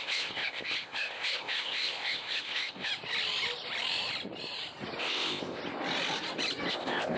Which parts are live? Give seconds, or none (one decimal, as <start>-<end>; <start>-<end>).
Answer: 2.9-5.0; 5.6-6.7